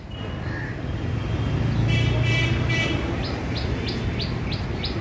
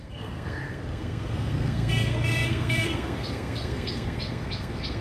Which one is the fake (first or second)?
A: second